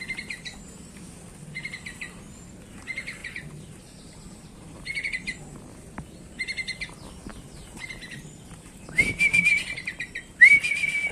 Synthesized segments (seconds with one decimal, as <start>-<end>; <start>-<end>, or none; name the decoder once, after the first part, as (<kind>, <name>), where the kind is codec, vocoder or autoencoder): 3.2-5.4 (vocoder, BigVGAN v2); 7.3-10.4